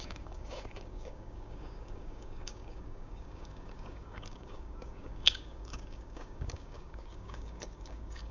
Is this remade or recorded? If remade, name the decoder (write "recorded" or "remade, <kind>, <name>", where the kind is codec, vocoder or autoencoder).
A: remade, codec, DAC